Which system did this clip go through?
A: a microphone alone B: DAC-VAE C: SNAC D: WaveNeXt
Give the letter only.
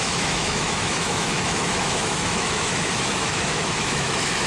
B